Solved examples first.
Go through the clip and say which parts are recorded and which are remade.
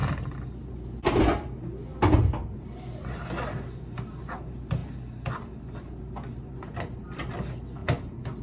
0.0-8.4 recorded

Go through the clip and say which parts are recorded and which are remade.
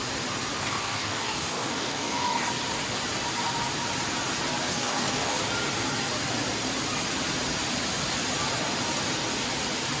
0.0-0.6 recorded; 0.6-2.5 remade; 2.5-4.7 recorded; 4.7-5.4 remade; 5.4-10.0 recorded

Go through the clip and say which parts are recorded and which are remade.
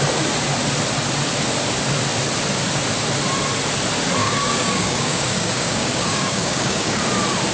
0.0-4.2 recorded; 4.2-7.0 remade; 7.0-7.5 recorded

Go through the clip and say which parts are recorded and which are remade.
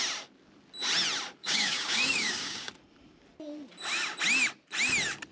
0.0-1.4 recorded; 1.4-2.7 remade; 2.7-5.3 recorded